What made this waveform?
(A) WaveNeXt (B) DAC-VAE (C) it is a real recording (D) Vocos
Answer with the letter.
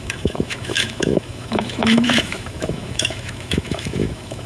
B